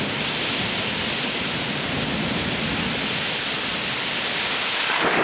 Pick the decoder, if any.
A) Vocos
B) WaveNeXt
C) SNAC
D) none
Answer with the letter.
D